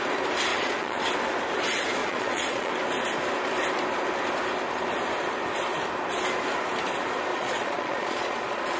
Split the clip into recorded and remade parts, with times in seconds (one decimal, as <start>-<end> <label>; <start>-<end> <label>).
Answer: 0.0-0.5 recorded; 0.5-1.0 remade; 1.0-2.0 recorded; 2.0-2.7 remade; 2.7-7.3 recorded; 7.3-8.8 remade